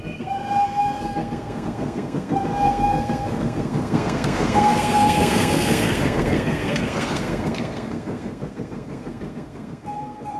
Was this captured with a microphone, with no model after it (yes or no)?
no